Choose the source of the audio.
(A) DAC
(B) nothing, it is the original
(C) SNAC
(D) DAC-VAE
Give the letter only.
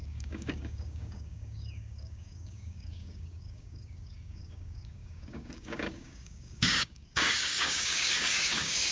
A